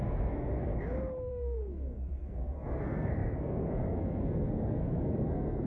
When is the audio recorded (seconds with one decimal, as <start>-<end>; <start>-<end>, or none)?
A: 0.7-1.3